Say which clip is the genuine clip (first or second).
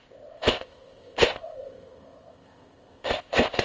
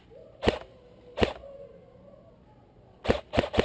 second